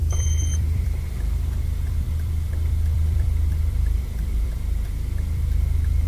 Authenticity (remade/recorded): remade